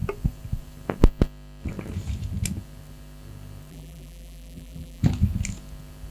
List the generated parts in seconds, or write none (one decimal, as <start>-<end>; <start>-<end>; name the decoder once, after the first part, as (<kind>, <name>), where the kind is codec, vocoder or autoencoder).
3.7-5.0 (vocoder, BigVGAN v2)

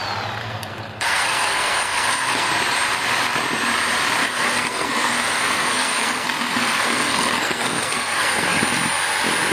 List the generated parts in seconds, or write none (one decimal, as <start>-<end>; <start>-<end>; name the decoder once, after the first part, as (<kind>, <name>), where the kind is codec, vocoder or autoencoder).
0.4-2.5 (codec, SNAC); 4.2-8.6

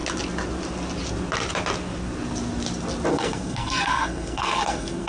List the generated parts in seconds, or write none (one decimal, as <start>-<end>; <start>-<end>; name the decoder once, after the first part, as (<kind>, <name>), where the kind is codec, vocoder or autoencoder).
3.1-5.1 (codec, SNAC)

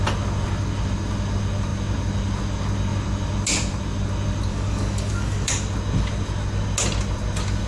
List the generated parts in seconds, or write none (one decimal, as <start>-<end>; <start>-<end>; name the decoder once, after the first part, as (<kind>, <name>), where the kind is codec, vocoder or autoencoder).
4.5-5.5 (codec, DAC)

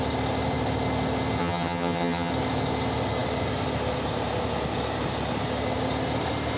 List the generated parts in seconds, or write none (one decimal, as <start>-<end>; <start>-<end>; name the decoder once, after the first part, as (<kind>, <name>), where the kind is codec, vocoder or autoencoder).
1.4-2.3 (vocoder, HiFi-GAN)

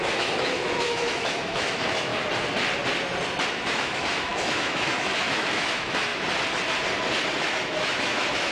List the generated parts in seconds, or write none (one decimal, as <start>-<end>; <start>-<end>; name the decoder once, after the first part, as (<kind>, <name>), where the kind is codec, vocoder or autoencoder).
0.0-2.1 (autoencoder, DAC-VAE); 3.5-6.1; 7.4-8.5